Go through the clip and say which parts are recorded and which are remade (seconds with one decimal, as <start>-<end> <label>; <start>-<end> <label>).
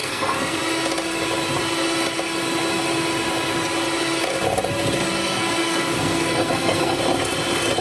0.0-0.6 remade; 0.6-5.2 recorded; 5.2-7.0 remade; 7.0-7.8 recorded